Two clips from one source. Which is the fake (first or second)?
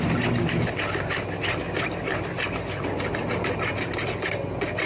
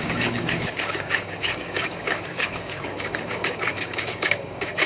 second